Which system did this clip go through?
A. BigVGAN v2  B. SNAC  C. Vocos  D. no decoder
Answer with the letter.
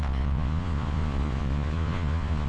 C